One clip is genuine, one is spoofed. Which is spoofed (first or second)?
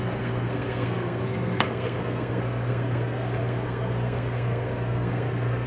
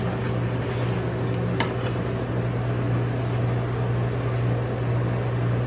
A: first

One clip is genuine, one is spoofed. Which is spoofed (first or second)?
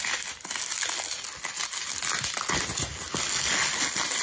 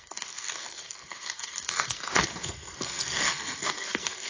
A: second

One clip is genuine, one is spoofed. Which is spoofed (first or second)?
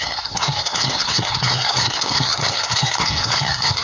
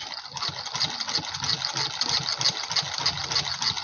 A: first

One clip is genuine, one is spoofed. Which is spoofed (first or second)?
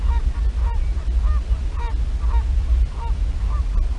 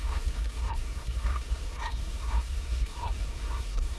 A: second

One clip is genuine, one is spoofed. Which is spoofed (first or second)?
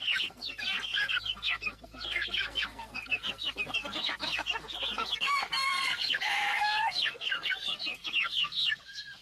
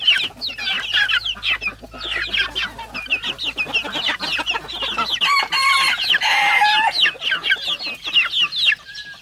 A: first